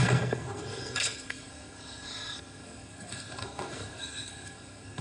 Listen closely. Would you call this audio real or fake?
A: fake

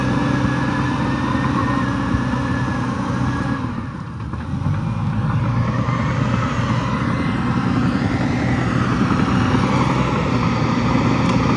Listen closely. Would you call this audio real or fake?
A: real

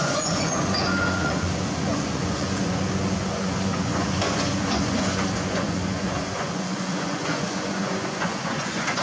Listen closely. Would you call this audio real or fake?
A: fake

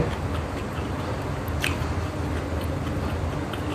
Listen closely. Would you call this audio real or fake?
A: real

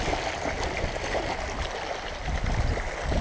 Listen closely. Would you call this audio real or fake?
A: real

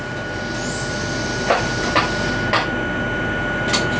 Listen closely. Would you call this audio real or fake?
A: real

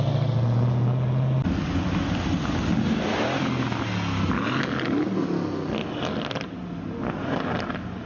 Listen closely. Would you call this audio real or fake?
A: real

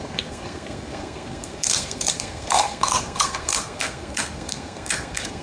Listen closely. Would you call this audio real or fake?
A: fake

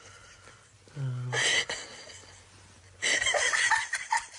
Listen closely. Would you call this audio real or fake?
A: real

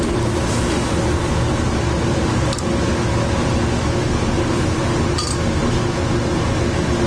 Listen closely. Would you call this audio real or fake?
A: real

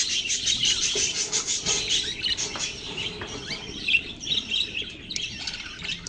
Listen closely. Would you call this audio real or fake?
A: fake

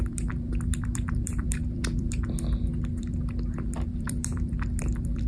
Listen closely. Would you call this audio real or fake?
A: fake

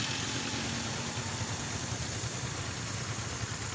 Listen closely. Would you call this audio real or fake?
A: real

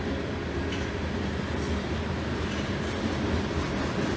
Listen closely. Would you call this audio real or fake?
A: real